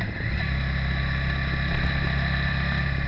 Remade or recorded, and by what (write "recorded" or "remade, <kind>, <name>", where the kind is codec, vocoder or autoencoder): recorded